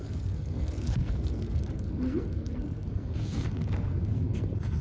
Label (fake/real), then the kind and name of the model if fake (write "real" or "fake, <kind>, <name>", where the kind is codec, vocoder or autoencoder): fake, codec, SNAC